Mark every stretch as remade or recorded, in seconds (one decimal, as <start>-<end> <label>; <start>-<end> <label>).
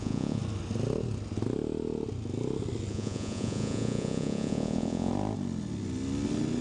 0.0-0.4 remade; 0.4-2.9 recorded; 2.9-5.1 remade; 5.1-6.6 recorded